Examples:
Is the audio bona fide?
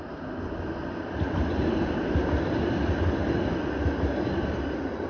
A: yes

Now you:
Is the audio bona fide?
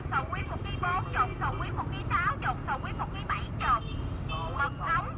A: yes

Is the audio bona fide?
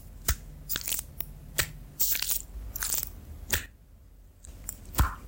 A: yes